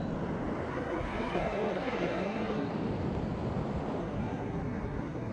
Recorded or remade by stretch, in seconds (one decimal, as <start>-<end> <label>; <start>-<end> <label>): 0.0-0.7 recorded; 0.7-2.7 remade; 2.7-4.0 recorded; 4.0-5.3 remade